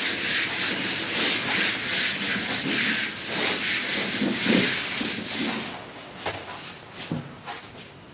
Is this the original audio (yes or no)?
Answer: yes